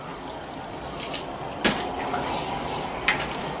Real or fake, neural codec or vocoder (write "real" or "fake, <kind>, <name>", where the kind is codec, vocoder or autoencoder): real